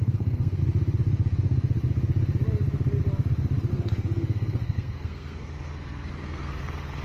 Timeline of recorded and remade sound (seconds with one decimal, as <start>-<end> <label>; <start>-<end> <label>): 0.0-0.6 remade; 0.6-3.7 recorded; 3.7-7.0 remade

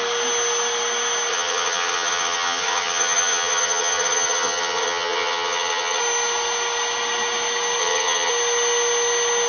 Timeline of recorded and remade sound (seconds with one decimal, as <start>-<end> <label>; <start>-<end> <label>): 0.0-1.3 recorded; 1.3-6.0 remade; 6.0-7.8 recorded; 7.8-8.3 remade; 8.3-9.5 recorded

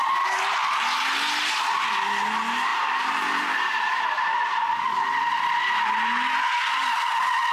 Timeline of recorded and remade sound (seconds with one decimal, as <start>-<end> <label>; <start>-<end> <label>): 0.0-2.7 recorded; 2.7-4.6 remade; 4.6-7.5 recorded

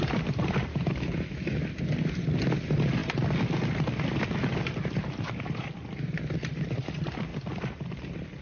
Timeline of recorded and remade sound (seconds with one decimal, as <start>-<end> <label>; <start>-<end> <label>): 0.0-0.7 recorded; 0.7-1.7 remade; 1.7-8.4 recorded

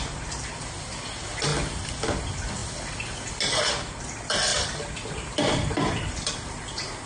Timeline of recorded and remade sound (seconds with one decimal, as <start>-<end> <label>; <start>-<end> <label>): 0.0-4.5 recorded; 4.5-6.3 remade; 6.3-7.1 recorded